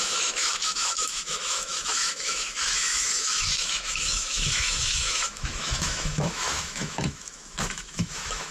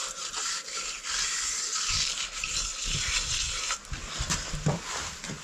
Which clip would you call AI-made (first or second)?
first